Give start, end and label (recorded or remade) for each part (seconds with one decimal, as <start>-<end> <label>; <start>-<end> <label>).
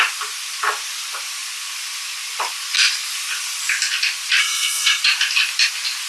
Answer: 0.0-4.4 recorded; 4.4-5.0 remade; 5.0-6.1 recorded